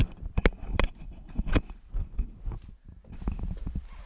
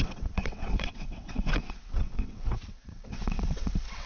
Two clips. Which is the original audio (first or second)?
first